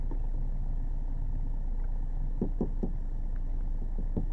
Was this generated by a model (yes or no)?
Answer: no